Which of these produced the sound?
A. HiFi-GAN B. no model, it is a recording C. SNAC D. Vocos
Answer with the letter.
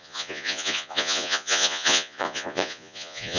D